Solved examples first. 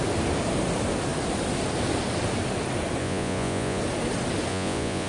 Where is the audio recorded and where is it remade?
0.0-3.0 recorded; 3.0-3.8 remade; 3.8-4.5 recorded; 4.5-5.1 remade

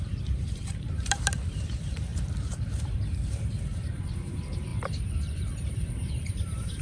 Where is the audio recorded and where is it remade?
0.0-6.8 remade

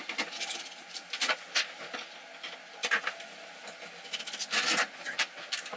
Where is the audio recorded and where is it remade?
0.0-2.8 recorded; 2.8-4.2 remade; 4.2-5.8 recorded

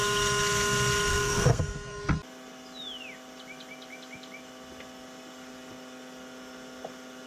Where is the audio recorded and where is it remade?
0.0-1.1 recorded; 1.1-1.6 remade; 1.6-7.3 recorded

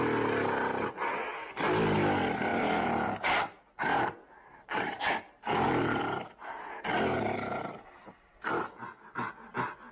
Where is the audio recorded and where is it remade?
0.0-2.5 recorded; 2.5-6.0 remade; 6.0-9.9 recorded